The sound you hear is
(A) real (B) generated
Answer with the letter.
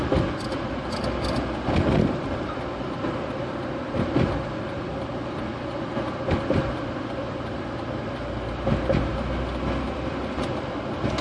B